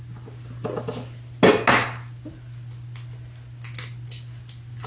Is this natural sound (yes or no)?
yes